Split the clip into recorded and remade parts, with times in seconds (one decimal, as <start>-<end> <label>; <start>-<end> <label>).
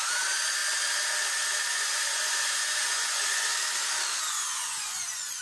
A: 0.0-0.6 remade; 0.6-1.7 recorded; 1.7-3.5 remade; 3.5-4.3 recorded; 4.3-5.4 remade